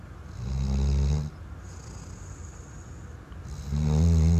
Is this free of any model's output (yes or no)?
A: yes